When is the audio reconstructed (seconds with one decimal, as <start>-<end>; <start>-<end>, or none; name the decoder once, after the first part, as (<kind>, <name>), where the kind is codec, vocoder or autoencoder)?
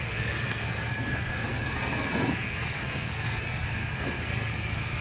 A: 0.0-5.0 (codec, SNAC)